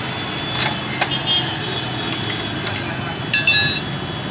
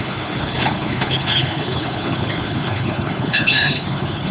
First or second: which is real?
first